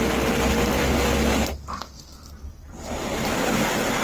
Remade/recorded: recorded